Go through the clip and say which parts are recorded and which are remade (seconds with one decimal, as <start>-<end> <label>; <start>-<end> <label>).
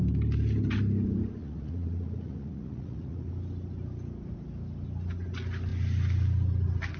0.0-1.4 recorded; 1.4-3.3 remade; 3.3-7.0 recorded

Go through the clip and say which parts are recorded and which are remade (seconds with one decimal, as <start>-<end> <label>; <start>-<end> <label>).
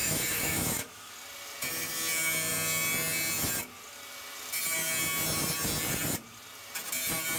0.0-1.1 remade; 1.1-7.4 recorded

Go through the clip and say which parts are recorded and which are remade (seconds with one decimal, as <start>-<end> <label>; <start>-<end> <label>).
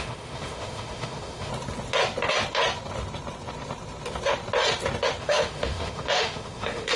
0.0-1.5 remade; 1.5-5.2 recorded; 5.2-7.0 remade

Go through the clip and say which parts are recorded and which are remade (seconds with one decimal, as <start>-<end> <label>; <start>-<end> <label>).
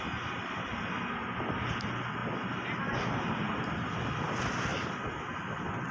0.0-5.9 recorded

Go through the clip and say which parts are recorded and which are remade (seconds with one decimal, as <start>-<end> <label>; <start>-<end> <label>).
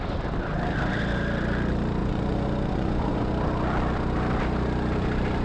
0.0-2.0 recorded; 2.0-3.3 remade; 3.3-5.4 recorded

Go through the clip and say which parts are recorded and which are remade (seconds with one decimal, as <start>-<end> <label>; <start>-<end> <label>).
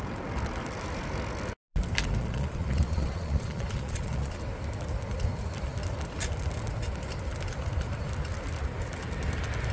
0.0-2.2 recorded; 2.2-4.4 remade; 4.4-9.7 recorded